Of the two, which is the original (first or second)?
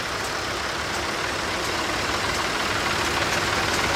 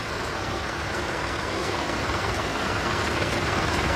first